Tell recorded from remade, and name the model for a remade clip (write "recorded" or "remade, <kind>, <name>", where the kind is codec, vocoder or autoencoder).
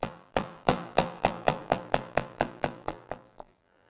remade, vocoder, BigVGAN v2